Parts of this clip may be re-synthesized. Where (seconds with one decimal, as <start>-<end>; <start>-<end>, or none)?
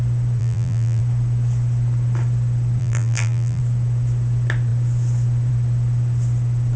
0.4-1.0; 2.8-3.6